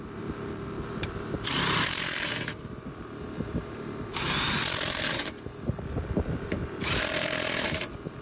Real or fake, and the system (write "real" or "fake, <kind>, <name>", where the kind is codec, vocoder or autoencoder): fake, vocoder, BigVGAN v2